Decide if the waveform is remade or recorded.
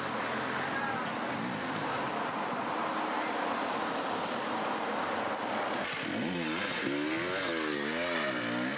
recorded